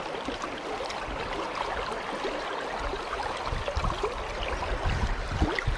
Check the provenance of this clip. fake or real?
real